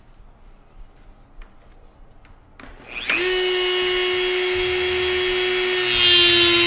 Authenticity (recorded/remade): recorded